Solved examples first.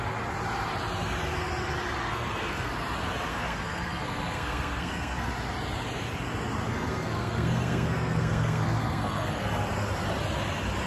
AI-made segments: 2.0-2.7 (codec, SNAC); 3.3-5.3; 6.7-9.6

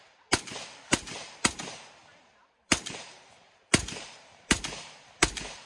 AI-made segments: 2.1-4.6 (vocoder, BigVGAN v2)

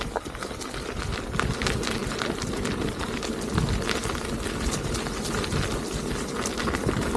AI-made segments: none

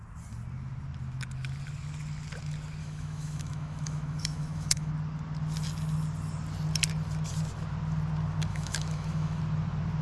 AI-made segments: 2.8-4.9 (autoencoder, DAC-VAE); 8.5-9.4

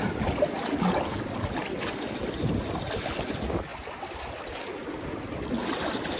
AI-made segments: none

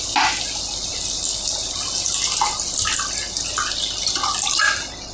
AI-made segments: none

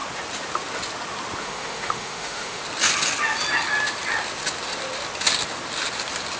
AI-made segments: 1.4-2.6 (autoencoder, DAC-VAE)